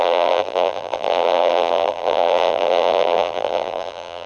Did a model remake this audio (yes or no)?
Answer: yes